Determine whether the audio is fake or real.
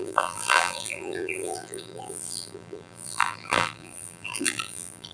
fake